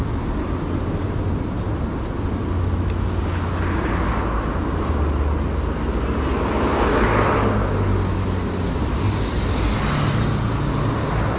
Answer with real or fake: real